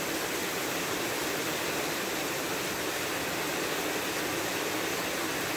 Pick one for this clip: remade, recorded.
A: recorded